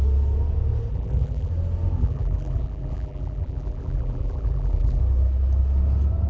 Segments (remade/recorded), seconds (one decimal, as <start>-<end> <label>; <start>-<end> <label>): 0.0-0.9 recorded; 0.9-1.5 remade; 1.5-2.0 recorded; 2.0-5.0 remade; 5.0-6.3 recorded